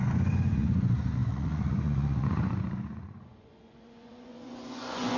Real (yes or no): no